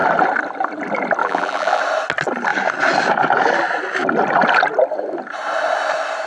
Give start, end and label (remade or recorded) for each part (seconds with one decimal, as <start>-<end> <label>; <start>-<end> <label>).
0.0-1.2 recorded; 1.2-1.8 remade; 1.8-6.3 recorded